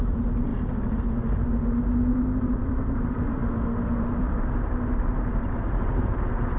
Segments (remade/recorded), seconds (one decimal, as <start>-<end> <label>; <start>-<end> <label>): 0.0-0.5 remade; 0.5-2.6 recorded; 2.6-3.4 remade; 3.4-4.2 recorded; 4.2-6.6 remade